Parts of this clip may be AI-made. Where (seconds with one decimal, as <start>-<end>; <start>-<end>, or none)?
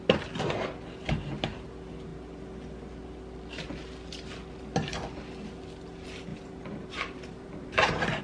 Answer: 6.3-8.2